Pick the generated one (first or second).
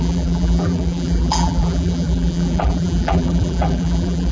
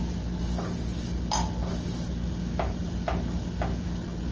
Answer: first